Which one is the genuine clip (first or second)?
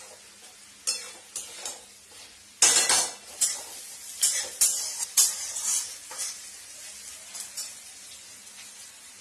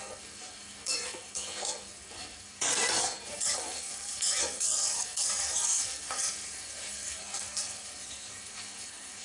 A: first